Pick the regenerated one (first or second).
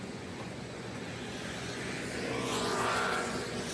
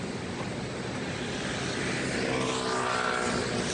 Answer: first